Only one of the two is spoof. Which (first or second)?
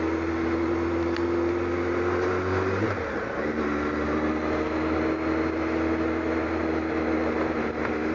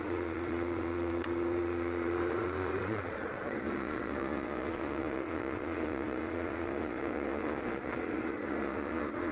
second